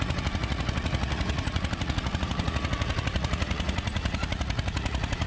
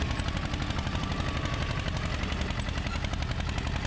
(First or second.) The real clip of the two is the second